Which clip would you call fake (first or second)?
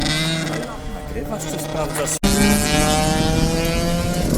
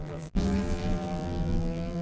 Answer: second